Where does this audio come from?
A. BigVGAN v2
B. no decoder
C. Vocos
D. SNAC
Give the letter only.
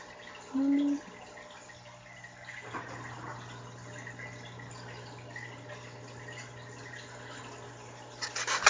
B